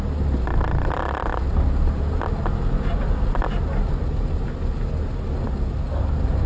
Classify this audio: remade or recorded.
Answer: recorded